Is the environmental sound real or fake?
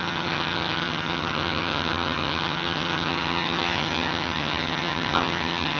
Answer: fake